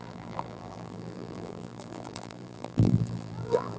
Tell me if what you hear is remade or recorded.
remade